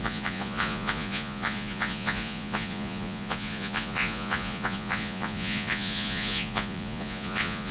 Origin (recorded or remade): remade